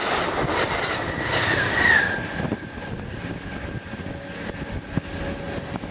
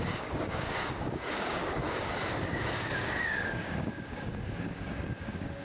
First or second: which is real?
first